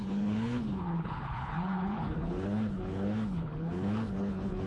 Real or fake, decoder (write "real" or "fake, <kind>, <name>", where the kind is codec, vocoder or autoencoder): fake, codec, HILCodec